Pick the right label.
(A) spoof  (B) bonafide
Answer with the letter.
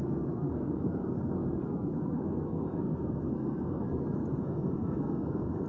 A